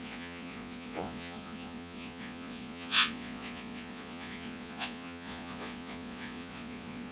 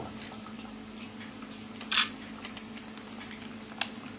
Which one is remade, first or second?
first